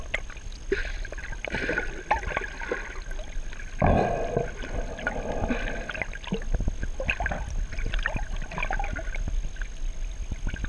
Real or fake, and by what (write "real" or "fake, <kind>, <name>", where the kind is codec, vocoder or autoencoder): real